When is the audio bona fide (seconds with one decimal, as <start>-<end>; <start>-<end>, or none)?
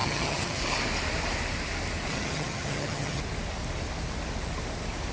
0.6-2.1; 3.2-5.1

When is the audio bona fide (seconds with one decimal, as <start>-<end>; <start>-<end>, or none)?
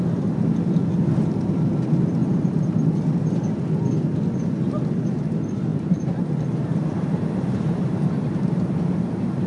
0.0-2.2; 2.7-5.7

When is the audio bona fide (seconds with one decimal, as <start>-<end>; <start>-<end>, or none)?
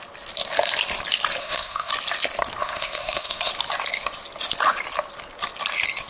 0.0-1.4; 1.9-2.6; 3.5-6.1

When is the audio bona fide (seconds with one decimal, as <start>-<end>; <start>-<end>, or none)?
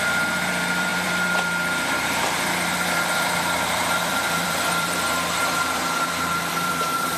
none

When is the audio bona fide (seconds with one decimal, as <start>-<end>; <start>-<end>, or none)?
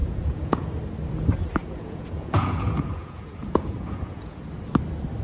0.7-1.6; 4.4-5.2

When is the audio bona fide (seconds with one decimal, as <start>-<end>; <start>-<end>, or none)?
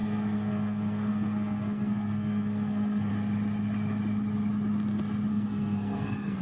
3.1-5.3